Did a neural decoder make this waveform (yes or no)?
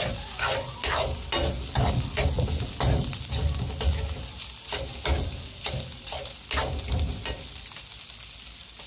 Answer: no